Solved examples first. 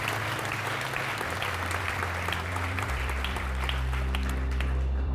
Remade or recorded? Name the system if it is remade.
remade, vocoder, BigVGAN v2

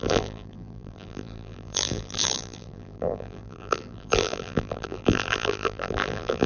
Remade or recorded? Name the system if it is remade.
remade, vocoder, BigVGAN v2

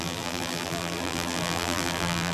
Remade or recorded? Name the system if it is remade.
remade, vocoder, BigVGAN v2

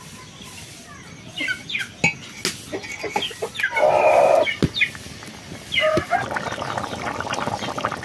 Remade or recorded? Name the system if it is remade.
recorded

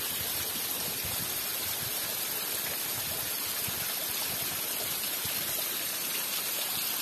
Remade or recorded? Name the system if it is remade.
recorded